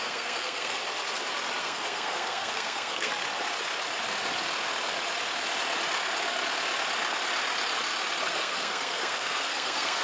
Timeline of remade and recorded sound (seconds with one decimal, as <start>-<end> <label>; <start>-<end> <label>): 0.0-0.8 remade; 0.8-1.6 recorded; 1.6-3.1 remade; 3.1-8.3 recorded; 8.3-10.0 remade